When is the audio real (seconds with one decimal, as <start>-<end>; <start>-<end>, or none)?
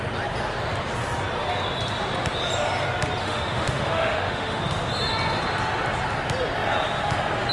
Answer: 0.0-3.2; 4.6-7.5